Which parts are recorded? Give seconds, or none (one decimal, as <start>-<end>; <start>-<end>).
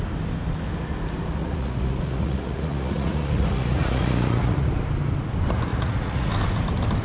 0.0-1.4; 4.7-5.7; 6.3-7.0